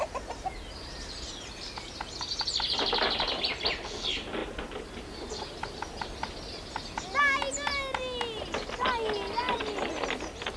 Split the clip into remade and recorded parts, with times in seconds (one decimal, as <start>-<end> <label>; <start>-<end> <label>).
0.0-10.6 recorded